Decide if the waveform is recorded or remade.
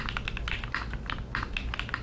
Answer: recorded